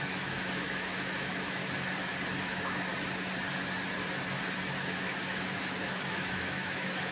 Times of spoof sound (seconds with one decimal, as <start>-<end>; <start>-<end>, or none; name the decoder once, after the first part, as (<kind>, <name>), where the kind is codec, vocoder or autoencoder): 0.0-1.6 (autoencoder, DAC-VAE); 2.4-2.9; 5.0-7.1